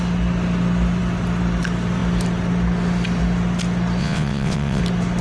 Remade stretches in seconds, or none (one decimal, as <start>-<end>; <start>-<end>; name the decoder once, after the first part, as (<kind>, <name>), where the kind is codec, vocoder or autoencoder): 4.0-4.8 (vocoder, WaveNeXt)